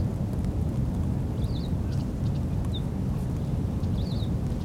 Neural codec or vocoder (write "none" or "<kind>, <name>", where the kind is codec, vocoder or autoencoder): none